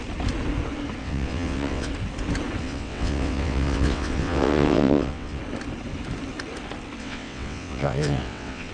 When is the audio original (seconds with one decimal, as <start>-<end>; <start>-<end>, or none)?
0.0-1.0; 1.9-2.6; 5.4-7.0